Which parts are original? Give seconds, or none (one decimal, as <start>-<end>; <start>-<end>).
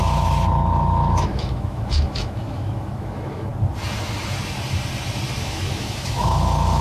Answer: 3.5-5.4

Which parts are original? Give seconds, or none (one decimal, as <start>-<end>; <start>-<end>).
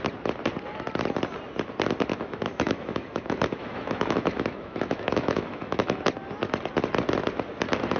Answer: 0.0-2.1; 6.0-8.0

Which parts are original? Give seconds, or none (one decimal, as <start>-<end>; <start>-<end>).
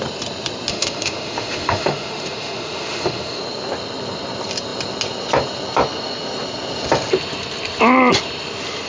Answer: 0.0-0.7; 3.4-8.9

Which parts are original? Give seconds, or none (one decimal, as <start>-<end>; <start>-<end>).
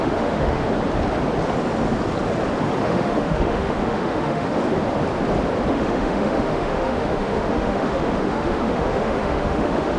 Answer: 0.6-2.8; 4.6-5.7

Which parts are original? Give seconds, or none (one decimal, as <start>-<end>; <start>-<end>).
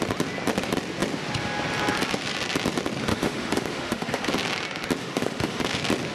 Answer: 0.0-3.1; 4.3-5.0; 5.6-6.1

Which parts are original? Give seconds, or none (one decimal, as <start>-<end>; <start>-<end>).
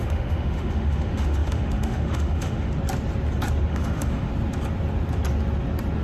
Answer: 2.7-3.7; 4.3-6.0